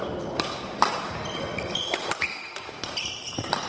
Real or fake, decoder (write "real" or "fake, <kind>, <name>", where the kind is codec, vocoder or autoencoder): fake, vocoder, BigVGAN v2